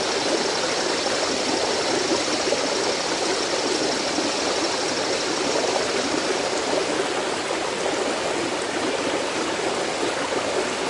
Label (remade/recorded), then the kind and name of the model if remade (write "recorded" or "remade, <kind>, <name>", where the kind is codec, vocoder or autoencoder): recorded